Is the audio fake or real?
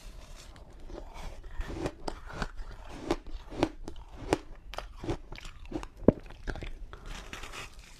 fake